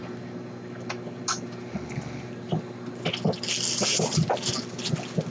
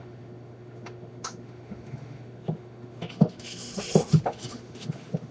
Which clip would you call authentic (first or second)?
first